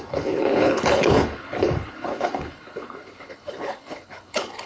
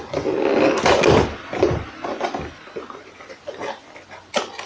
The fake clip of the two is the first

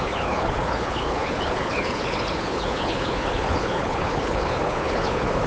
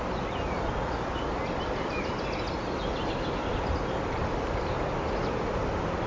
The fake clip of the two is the first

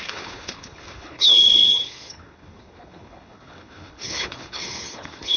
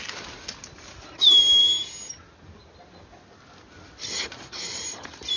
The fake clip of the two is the first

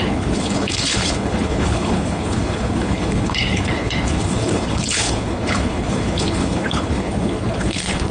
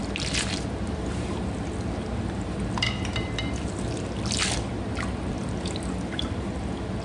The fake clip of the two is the first